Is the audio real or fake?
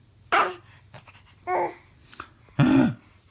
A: real